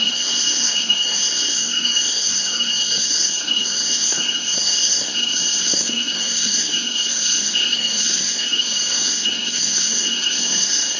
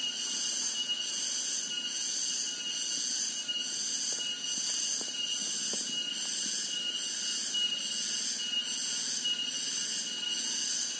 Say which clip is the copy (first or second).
first